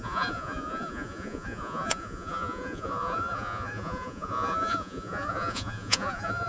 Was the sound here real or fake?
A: fake